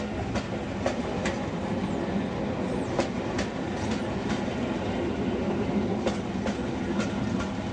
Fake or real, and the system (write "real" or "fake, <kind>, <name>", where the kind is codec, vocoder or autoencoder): real